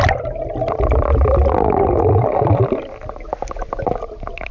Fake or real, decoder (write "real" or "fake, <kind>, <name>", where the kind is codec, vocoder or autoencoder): real